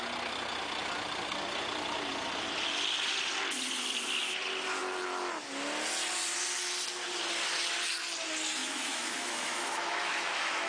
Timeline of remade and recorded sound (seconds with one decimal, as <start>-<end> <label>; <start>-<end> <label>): 0.0-8.6 recorded; 8.6-10.7 remade